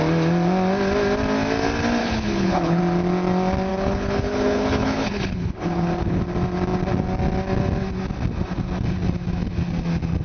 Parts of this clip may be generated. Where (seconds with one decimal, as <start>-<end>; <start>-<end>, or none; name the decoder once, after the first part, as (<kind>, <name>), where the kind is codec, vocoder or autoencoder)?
2.0-2.8 (codec, HILCodec); 3.7-6.2